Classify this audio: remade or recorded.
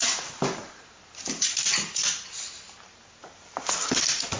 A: recorded